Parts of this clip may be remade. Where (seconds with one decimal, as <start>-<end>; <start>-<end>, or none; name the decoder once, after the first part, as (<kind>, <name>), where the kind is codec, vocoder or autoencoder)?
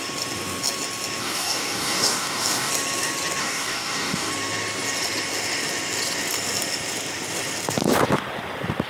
1.2-2.7 (codec, DAC); 3.4-4.3